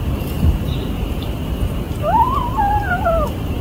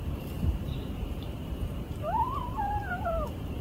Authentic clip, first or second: first